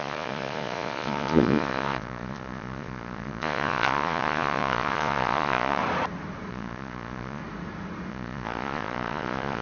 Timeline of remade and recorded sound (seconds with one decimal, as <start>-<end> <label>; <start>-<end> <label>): 0.0-5.8 remade; 5.8-6.5 recorded; 6.5-7.4 remade; 7.4-8.1 recorded; 8.1-9.6 remade